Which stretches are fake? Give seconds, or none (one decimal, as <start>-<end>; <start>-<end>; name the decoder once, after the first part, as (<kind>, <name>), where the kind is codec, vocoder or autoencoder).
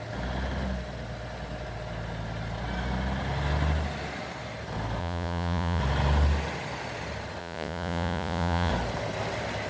5.0-5.8 (vocoder, Vocos); 7.4-8.7